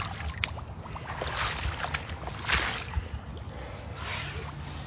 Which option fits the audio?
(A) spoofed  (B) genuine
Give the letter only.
B